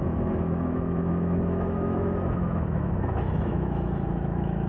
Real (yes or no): no